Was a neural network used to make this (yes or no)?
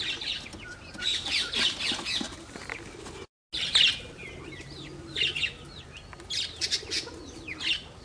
no